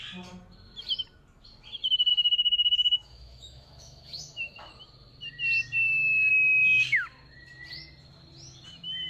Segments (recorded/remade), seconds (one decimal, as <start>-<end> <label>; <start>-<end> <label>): 0.0-2.1 recorded; 2.1-4.7 remade; 4.7-6.3 recorded; 6.3-6.8 remade; 6.8-9.1 recorded